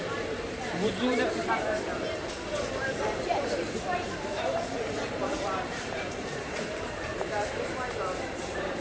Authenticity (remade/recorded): remade